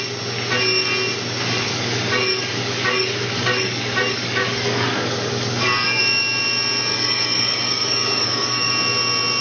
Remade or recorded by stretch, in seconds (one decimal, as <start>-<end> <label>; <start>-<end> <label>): 0.0-1.7 recorded; 1.7-6.0 remade; 6.0-6.9 recorded; 6.9-8.7 remade; 8.7-9.4 recorded